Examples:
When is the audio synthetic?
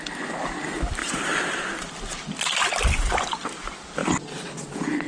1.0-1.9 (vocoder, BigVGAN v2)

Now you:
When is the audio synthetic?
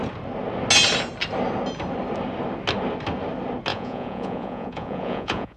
3.7-5.6 (vocoder, Vocos)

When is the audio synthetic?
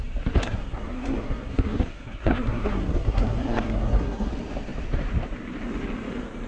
0.4-4.3 (codec, SNAC)